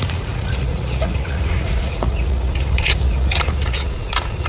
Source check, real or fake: fake